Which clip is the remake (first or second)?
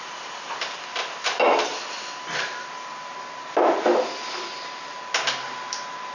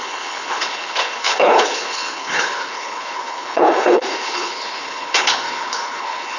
second